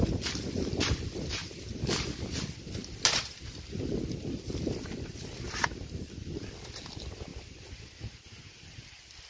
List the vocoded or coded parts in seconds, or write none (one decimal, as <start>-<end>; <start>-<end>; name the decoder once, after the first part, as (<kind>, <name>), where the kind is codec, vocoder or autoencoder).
none